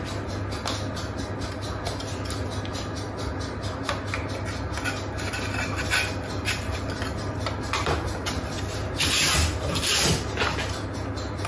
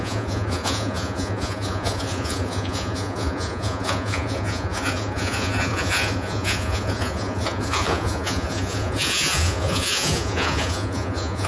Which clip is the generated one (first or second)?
second